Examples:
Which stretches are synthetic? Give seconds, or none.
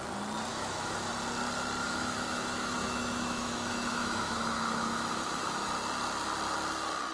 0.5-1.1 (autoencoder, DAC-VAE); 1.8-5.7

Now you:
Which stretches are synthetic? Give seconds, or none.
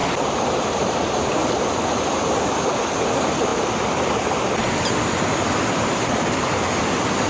none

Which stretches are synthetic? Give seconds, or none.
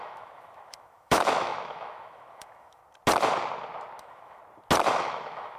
0.0-2.8 (autoencoder, DAC-VAE); 4.0-4.4; 4.9-5.6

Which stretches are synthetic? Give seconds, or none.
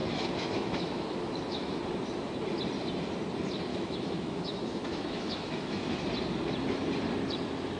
0.0-1.8 (autoencoder, DAC-VAE); 3.7-6.0